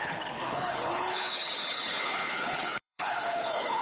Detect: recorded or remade remade